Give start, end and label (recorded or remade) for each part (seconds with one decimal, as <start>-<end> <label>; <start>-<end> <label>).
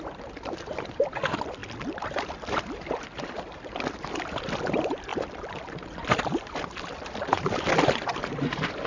0.0-8.9 recorded